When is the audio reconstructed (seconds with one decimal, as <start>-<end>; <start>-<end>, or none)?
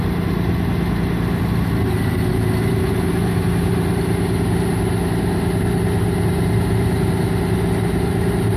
none